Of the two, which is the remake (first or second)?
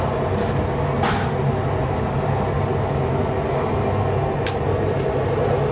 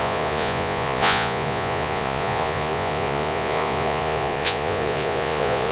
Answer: second